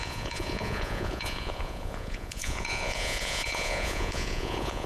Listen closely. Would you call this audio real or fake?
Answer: fake